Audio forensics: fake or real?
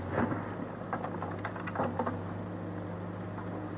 real